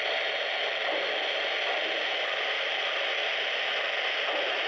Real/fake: real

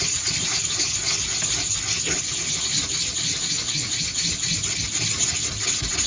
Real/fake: real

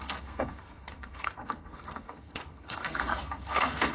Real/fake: fake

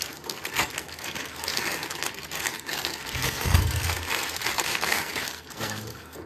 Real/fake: fake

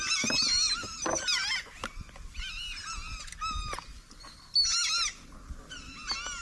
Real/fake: real